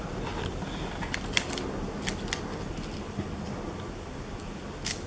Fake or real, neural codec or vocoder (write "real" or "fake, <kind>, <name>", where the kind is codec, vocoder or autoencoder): real